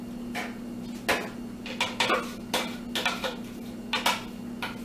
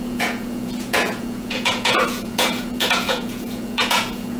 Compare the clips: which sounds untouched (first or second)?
first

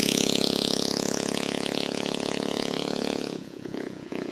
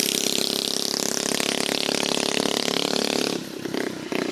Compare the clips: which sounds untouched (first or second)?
second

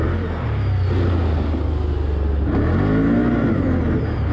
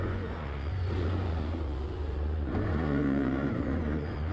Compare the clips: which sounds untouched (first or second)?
first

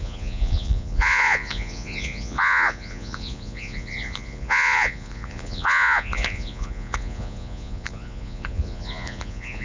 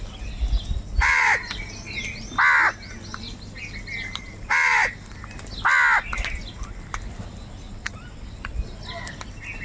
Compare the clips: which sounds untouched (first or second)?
second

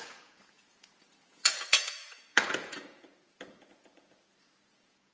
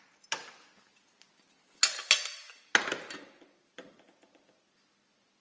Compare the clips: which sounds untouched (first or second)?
second